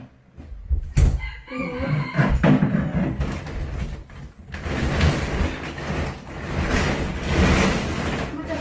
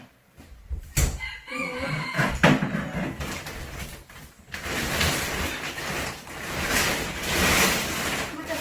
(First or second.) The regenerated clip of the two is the second